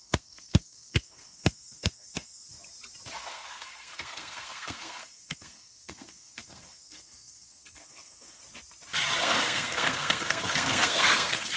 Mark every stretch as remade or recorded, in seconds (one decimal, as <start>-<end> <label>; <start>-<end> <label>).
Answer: 0.0-2.5 remade; 2.5-3.3 recorded; 3.3-8.4 remade; 8.4-9.2 recorded; 9.2-11.6 remade